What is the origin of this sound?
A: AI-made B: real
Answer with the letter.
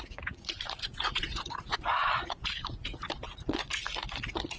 A